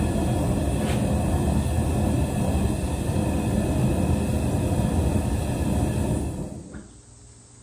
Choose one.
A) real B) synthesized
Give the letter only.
A